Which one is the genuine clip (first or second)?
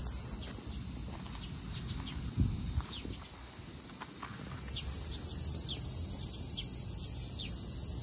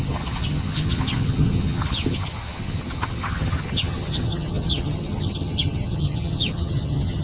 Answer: first